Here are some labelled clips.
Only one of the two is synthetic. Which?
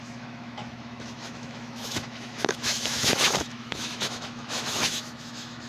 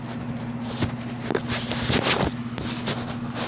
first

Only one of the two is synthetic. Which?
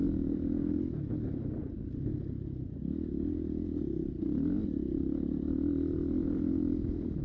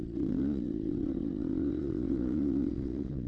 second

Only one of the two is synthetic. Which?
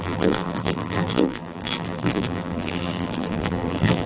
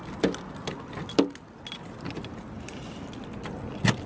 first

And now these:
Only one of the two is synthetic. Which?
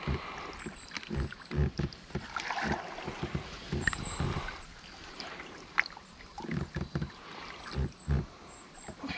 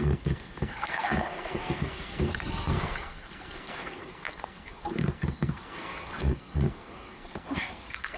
second